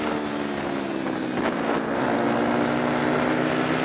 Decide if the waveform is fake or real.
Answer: real